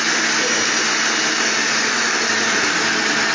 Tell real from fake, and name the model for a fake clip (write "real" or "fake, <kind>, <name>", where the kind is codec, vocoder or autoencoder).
real